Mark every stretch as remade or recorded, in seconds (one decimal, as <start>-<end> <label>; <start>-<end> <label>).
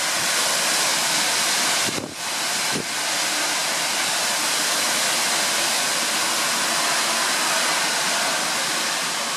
0.0-0.9 recorded; 0.9-1.9 remade; 1.9-9.4 recorded